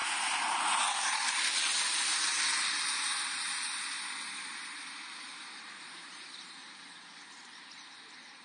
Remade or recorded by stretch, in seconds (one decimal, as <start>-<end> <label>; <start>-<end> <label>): 0.0-4.5 recorded; 4.5-6.6 remade; 6.6-7.3 recorded; 7.3-8.4 remade